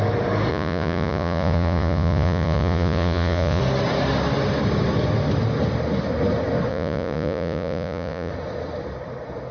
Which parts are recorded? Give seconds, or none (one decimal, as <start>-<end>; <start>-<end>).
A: 0.0-0.5; 3.6-6.7; 8.3-9.5

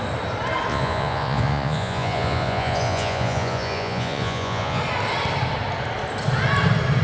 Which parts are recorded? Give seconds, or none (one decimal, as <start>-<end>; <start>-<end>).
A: 0.0-0.7; 4.8-7.0